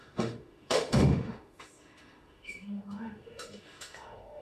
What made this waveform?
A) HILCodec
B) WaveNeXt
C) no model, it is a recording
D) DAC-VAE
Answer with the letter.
D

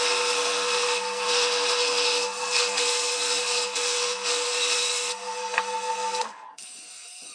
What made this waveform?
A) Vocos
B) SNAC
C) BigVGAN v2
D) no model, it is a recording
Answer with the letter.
B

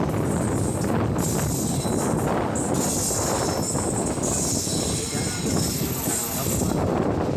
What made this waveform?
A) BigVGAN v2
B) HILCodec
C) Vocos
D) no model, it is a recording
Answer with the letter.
D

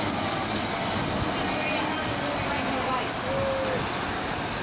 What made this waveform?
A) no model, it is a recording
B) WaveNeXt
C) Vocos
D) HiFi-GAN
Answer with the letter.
A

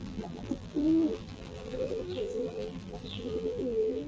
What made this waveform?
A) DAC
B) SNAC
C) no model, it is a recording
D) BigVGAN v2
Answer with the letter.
D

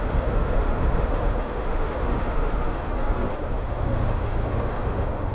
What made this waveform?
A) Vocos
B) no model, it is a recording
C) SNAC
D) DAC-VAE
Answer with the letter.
D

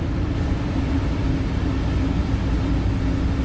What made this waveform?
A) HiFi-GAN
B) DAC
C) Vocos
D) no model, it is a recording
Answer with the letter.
D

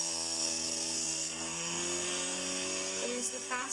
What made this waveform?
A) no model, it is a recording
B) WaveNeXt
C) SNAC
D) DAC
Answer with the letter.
C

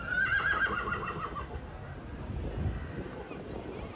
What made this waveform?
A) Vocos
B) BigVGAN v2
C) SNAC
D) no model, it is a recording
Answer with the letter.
D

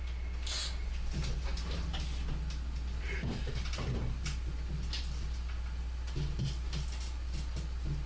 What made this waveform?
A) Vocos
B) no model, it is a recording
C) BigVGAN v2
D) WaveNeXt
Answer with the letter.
B